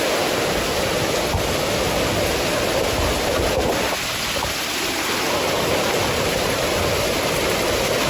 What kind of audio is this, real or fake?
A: real